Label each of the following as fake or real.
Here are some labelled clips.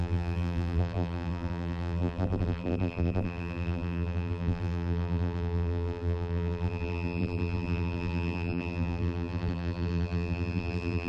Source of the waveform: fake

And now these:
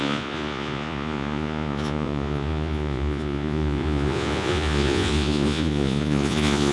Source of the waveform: fake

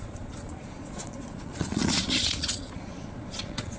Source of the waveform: fake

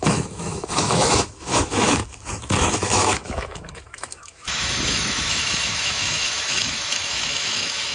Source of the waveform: fake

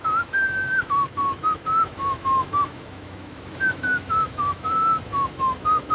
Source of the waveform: fake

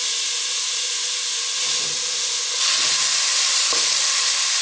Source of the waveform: real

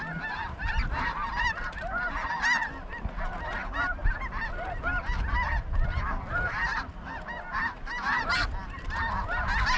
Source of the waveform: real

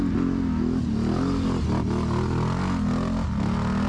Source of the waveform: real